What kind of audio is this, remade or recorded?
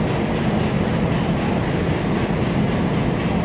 recorded